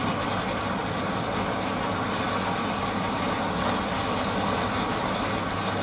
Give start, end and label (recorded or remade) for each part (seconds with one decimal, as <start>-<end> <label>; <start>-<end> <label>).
0.0-5.8 recorded

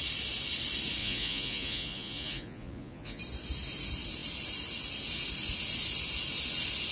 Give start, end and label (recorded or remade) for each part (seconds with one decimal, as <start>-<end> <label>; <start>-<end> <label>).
0.0-1.0 recorded; 1.0-3.2 remade; 3.2-6.9 recorded

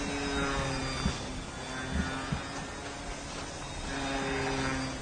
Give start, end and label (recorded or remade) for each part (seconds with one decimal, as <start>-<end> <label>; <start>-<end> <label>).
0.0-5.0 recorded

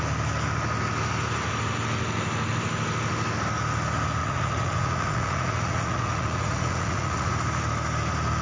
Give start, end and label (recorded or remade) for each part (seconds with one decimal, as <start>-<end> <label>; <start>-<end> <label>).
0.0-4.2 recorded; 4.2-7.3 remade; 7.3-8.4 recorded

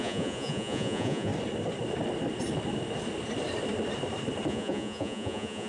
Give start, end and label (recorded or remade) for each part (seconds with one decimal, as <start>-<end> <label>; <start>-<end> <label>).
0.0-1.3 remade; 1.3-4.5 recorded; 4.5-5.7 remade

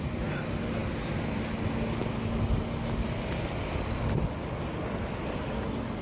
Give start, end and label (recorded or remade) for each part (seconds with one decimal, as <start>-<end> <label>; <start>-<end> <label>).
0.0-6.0 recorded

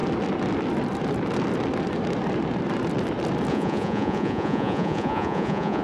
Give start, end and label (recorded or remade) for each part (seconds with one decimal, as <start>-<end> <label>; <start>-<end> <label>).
0.0-3.5 recorded; 3.5-5.8 remade